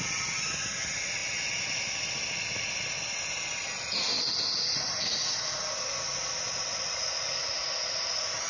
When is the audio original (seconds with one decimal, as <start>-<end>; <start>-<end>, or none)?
0.0-8.5